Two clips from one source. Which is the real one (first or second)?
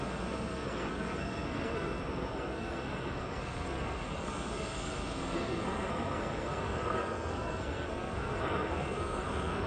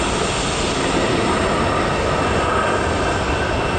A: second